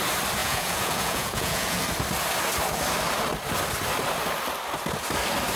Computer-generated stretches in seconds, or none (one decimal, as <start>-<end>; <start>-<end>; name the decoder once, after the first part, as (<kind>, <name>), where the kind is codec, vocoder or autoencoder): 0.4-1.8 (vocoder, Vocos)